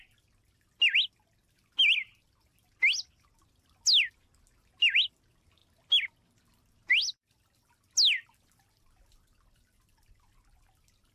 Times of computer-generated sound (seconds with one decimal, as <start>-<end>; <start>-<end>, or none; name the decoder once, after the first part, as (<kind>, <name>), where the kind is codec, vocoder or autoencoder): none